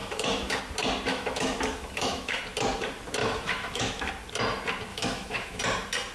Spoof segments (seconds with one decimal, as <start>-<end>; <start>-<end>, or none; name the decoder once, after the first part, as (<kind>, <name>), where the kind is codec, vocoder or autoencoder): 0.0-0.6 (autoencoder, DAC-VAE); 1.1-2.4; 3.2-4.1; 4.9-5.6